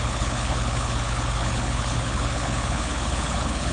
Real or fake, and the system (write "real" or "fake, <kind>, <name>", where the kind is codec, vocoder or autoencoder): fake, codec, HILCodec